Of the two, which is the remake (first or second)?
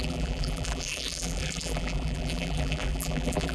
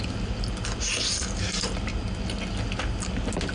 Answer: first